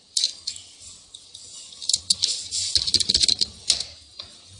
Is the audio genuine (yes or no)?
yes